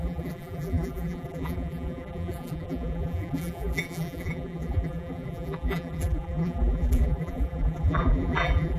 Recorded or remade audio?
remade